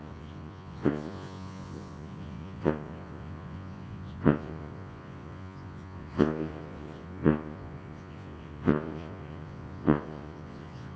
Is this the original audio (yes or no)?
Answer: no